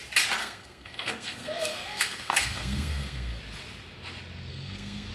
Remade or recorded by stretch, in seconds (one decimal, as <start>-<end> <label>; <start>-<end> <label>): 0.0-0.4 recorded; 0.4-3.4 remade; 3.4-4.5 recorded; 4.5-5.1 remade